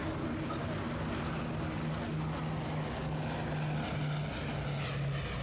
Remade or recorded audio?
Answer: recorded